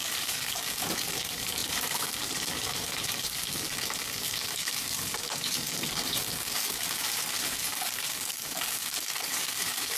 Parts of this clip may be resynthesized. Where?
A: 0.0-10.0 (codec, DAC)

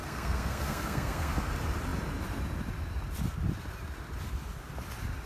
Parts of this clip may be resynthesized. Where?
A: 0.0-1.5 (codec, SNAC)